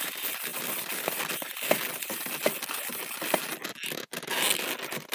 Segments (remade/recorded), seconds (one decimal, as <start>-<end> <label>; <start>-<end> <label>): 0.0-5.1 recorded